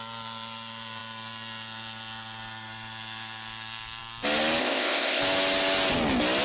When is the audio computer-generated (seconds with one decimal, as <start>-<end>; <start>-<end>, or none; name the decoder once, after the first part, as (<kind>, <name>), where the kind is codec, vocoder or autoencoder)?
4.6-5.2 (codec, ZipCodec)